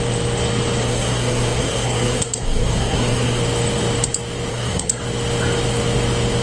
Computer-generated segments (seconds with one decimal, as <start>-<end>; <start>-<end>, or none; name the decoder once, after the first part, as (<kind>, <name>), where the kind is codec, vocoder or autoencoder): 0.8-3.4 (codec, SNAC); 4.5-5.0